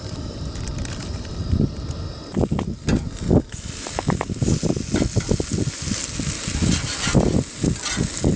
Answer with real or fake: real